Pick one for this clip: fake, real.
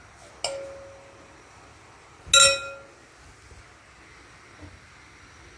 real